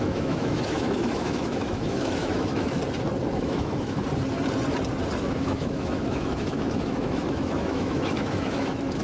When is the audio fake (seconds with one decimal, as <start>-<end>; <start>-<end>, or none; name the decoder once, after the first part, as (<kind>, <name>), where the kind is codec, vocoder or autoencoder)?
0.0-2.8 (autoencoder, DAC-VAE); 3.3-4.0; 5.2-9.0